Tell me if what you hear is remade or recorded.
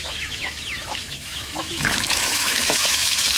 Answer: remade